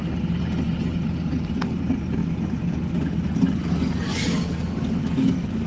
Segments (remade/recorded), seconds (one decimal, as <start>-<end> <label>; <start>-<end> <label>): 0.0-5.7 recorded